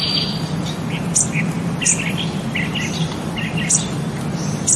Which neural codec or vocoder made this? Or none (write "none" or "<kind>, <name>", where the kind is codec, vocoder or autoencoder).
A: none